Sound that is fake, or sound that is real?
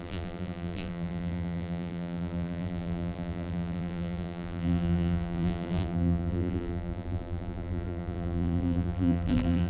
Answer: fake